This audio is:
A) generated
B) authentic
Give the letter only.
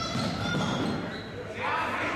B